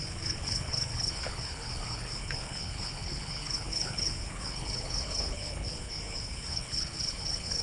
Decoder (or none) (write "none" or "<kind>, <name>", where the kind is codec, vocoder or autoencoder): codec, HILCodec